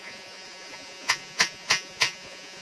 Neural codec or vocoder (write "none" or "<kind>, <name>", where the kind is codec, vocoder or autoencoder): vocoder, Vocos